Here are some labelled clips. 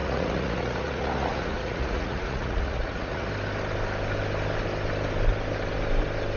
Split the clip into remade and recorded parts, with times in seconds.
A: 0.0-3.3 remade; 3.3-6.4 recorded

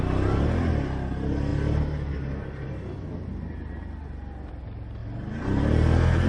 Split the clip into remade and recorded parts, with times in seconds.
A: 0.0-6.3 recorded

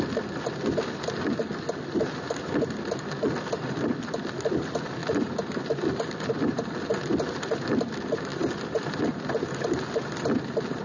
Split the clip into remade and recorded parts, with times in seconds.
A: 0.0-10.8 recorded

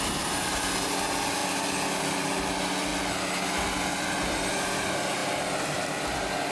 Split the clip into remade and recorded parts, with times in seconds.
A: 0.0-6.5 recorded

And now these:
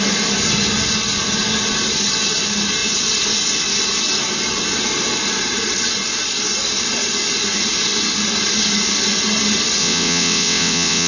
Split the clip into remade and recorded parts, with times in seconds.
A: 0.0-9.8 recorded; 9.8-11.1 remade

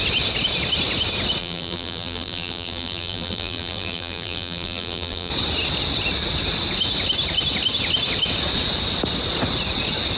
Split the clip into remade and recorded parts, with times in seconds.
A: 0.0-1.4 recorded; 1.4-5.3 remade; 5.3-10.2 recorded